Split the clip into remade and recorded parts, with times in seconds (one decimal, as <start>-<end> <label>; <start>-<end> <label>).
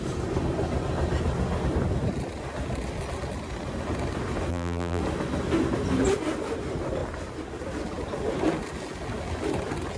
0.0-4.5 recorded; 4.5-5.0 remade; 5.0-10.0 recorded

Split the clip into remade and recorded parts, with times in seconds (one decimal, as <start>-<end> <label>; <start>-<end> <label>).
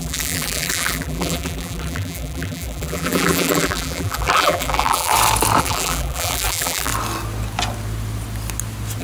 0.0-5.1 remade; 5.1-5.6 recorded; 5.6-6.9 remade; 6.9-9.0 recorded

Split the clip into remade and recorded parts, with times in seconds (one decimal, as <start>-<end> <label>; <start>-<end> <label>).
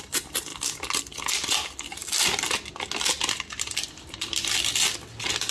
0.0-5.5 recorded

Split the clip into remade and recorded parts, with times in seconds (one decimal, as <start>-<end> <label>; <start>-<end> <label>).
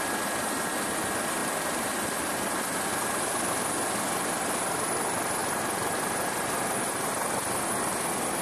0.0-1.4 recorded; 1.4-2.2 remade; 2.2-5.4 recorded; 5.4-7.7 remade; 7.7-8.4 recorded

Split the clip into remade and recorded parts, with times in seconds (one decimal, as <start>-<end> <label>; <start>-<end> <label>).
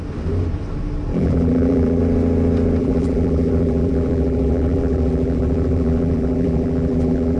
0.0-1.1 recorded; 1.1-2.0 remade; 2.0-2.8 recorded; 2.8-7.4 remade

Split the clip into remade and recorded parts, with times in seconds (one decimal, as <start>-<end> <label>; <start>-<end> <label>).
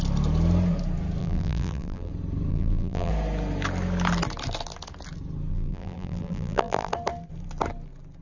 0.0-1.2 recorded; 1.2-2.1 remade; 2.1-2.5 recorded; 2.5-3.1 remade; 3.1-5.5 recorded; 5.5-6.9 remade; 6.9-8.2 recorded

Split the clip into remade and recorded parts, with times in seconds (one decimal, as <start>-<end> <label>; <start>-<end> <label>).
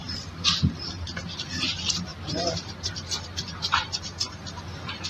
0.0-2.1 recorded; 2.1-2.9 remade; 2.9-5.1 recorded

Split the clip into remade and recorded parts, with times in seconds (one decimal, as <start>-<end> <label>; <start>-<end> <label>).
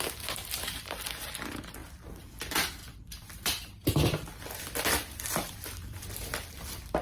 0.0-1.8 recorded; 1.8-2.4 remade; 2.4-2.8 recorded; 2.8-6.5 remade; 6.5-7.0 recorded